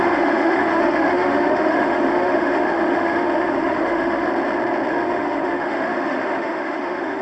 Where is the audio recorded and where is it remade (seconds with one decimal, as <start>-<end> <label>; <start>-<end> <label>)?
0.0-4.3 remade; 4.3-4.9 recorded; 4.9-7.2 remade